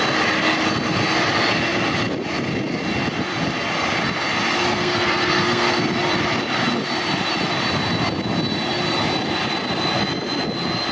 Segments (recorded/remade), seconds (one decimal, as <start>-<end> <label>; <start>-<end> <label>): 0.0-4.7 recorded; 4.7-5.8 remade; 5.8-10.9 recorded